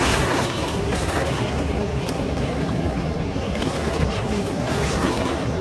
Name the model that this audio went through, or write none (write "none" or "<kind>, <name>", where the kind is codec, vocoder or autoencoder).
codec, SNAC